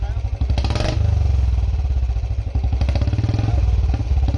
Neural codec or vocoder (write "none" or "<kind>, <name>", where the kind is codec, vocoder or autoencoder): none